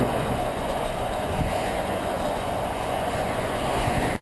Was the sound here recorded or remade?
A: remade